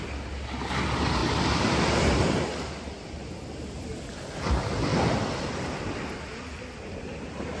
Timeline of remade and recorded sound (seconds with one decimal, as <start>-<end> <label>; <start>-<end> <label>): 0.0-7.6 recorded